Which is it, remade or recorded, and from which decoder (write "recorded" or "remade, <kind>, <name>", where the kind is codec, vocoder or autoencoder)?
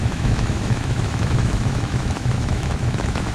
remade, autoencoder, DAC-VAE